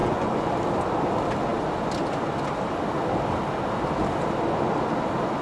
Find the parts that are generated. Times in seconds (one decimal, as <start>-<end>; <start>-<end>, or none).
0.0-0.5